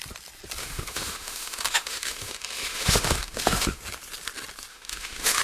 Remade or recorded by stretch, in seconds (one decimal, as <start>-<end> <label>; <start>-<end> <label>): 0.0-0.6 recorded; 0.6-3.8 remade; 3.8-4.7 recorded; 4.7-5.4 remade